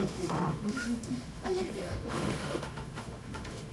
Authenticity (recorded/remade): remade